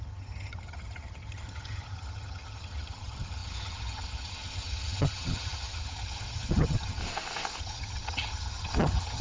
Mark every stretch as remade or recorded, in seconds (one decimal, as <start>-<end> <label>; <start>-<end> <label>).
0.0-7.0 remade; 7.0-7.6 recorded; 7.6-9.2 remade